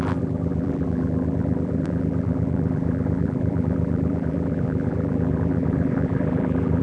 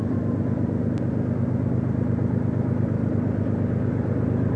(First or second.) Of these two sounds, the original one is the second